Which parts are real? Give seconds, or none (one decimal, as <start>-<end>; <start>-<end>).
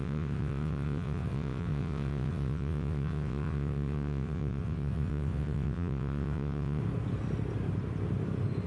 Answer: 6.8-8.7